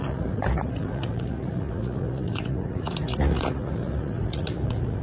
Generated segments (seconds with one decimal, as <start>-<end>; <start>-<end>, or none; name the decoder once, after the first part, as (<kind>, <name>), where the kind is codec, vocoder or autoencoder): 0.0-5.0 (vocoder, Vocos)